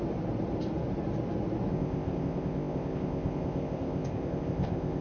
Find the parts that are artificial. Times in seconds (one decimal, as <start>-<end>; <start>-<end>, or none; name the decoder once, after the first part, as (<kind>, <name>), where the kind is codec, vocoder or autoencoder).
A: 1.7-5.0 (codec, ZipCodec)